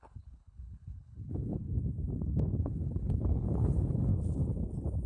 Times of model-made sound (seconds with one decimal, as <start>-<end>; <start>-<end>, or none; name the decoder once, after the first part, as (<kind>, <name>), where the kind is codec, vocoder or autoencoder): 0.0-1.7 (codec, HILCodec); 2.6-4.1